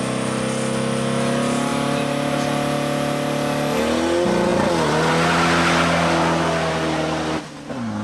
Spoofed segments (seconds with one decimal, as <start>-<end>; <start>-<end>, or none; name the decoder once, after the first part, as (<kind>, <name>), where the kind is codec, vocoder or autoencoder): none